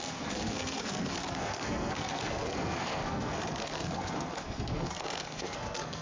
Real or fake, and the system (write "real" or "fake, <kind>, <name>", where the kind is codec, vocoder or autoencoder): fake, codec, SNAC